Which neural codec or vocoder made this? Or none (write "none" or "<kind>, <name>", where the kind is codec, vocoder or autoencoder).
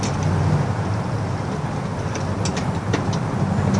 none